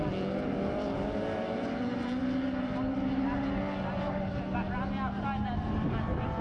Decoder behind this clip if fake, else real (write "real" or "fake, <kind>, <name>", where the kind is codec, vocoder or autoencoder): real